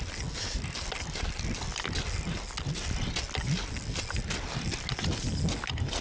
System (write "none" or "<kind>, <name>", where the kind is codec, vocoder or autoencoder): none